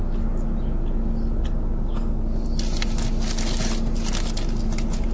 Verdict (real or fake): real